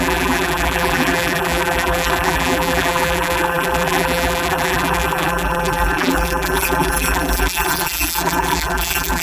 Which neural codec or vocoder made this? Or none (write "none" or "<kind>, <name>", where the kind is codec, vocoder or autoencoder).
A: vocoder, BigVGAN v2